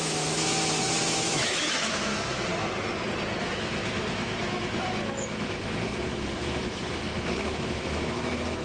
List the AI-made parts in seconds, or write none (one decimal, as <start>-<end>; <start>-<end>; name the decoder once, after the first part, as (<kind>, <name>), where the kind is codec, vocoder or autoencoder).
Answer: 0.0-2.5 (autoencoder, DAC-VAE); 3.4-8.6